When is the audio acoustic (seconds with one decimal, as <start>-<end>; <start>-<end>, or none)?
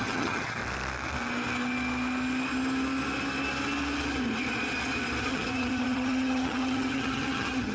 0.6-5.2